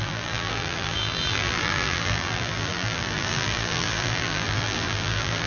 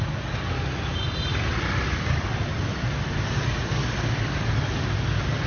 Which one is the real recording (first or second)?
second